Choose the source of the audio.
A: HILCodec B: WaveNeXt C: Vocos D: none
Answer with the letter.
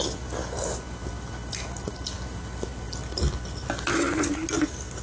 D